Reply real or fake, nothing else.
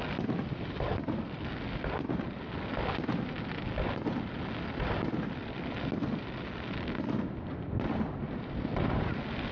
real